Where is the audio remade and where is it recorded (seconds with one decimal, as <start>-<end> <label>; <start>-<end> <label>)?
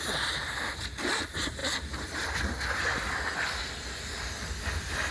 0.0-5.1 recorded